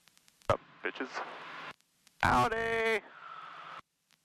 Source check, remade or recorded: recorded